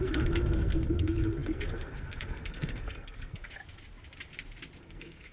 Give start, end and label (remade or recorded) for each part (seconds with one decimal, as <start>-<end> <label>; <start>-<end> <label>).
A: 0.0-3.6 remade; 3.6-4.8 recorded; 4.8-5.3 remade